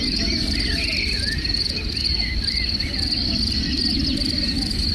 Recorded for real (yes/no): yes